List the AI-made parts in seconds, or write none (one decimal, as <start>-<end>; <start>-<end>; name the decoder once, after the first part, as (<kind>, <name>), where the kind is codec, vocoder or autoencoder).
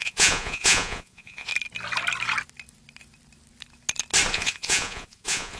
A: 0.0-1.5 (vocoder, Vocos); 4.3-5.6